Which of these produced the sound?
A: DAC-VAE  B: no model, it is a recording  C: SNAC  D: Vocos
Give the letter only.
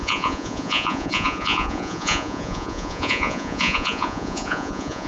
D